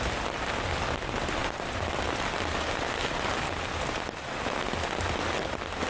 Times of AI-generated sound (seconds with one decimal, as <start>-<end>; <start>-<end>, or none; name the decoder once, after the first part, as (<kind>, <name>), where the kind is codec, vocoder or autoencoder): none